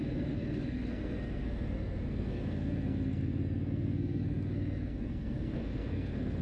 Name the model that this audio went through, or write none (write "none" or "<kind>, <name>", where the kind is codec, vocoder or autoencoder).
codec, SNAC